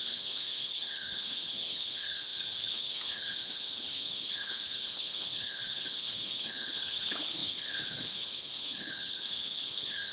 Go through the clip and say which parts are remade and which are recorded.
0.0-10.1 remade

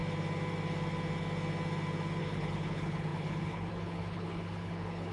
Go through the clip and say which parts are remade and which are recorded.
0.0-2.2 recorded; 2.2-5.1 remade

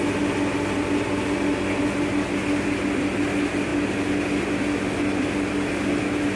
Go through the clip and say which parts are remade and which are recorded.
0.0-6.4 recorded

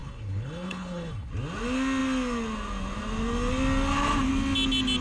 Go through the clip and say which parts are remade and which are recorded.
0.0-1.3 remade; 1.3-5.0 recorded

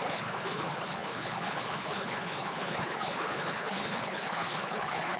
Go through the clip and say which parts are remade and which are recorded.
0.0-5.2 remade

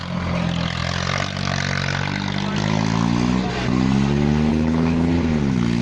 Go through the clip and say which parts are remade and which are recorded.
0.0-4.5 recorded; 4.5-5.1 remade; 5.1-5.8 recorded

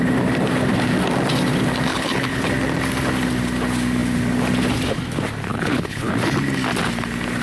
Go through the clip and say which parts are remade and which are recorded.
0.0-1.9 recorded; 1.9-2.4 remade; 2.4-5.5 recorded; 5.5-6.1 remade; 6.1-7.4 recorded

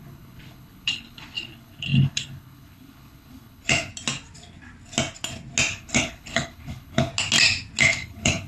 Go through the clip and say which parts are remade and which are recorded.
0.0-3.9 remade; 3.9-5.7 recorded; 5.7-7.1 remade; 7.1-7.8 recorded; 7.8-8.5 remade